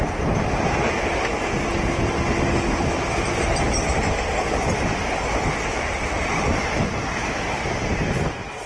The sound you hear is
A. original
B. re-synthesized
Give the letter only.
A